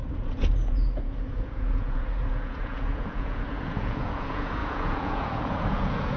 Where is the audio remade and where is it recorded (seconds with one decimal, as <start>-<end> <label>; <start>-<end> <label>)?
0.0-6.2 remade